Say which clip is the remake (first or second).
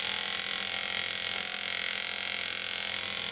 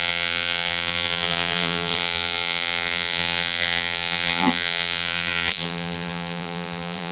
second